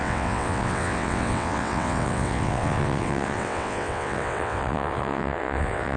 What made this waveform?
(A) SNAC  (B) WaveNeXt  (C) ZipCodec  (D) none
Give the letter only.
B